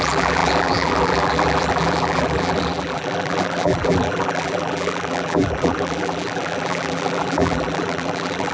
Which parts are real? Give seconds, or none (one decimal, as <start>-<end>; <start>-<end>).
none